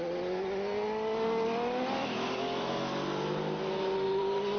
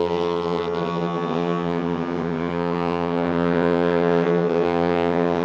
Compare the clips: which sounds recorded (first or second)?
first